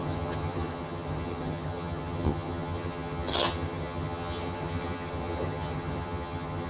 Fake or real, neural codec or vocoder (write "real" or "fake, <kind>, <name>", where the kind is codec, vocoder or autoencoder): fake, vocoder, HiFi-GAN